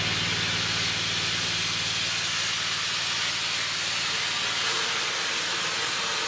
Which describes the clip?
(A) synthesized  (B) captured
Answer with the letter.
B